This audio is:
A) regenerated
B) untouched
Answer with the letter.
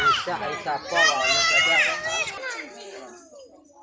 B